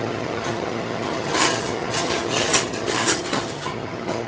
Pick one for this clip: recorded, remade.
remade